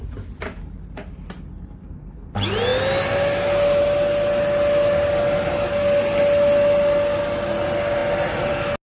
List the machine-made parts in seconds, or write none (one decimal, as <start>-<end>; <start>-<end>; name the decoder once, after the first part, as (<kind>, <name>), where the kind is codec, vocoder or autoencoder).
none

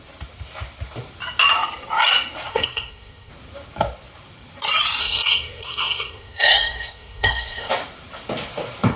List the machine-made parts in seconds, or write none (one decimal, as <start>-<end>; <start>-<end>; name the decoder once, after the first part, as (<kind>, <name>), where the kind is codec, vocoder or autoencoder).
2.5-3.3 (codec, SNAC); 5.0-7.7

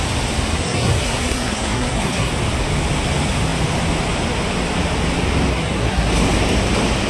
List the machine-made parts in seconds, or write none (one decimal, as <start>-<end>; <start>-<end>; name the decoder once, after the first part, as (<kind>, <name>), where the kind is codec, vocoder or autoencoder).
0.5-2.3 (codec, SNAC); 5.5-6.1

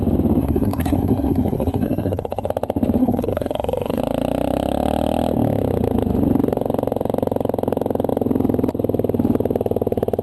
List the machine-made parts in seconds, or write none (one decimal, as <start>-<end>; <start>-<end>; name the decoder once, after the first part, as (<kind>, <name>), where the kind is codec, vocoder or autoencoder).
0.4-2.5 (codec, SNAC); 3.0-4.0

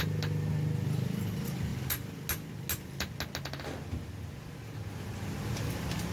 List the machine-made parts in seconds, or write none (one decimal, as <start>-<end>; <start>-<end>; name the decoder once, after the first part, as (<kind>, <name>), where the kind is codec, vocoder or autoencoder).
none